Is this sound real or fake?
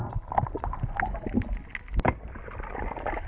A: real